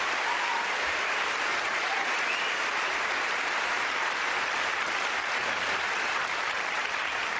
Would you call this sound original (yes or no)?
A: no